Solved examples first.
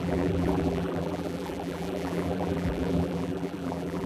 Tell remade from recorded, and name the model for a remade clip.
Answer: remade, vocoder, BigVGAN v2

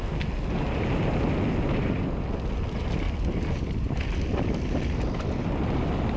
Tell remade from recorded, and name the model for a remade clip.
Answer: recorded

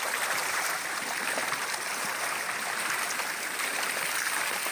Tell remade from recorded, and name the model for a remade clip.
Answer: recorded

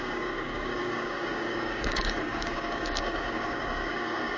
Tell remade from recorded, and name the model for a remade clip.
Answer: remade, codec, DAC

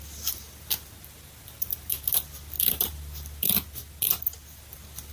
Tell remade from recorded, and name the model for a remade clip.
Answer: recorded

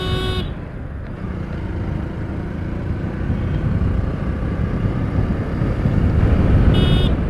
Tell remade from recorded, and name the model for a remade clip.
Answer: recorded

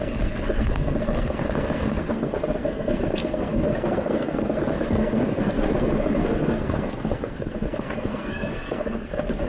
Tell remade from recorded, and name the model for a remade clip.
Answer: remade, codec, SNAC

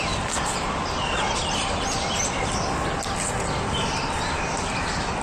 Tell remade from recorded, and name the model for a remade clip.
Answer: recorded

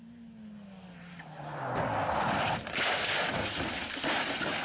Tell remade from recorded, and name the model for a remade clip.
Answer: recorded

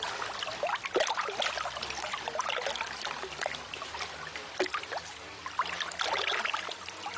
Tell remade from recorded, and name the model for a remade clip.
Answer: recorded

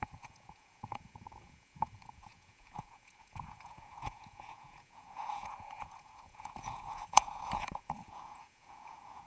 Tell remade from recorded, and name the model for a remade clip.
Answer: remade, vocoder, Vocos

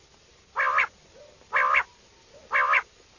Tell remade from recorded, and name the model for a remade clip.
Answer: recorded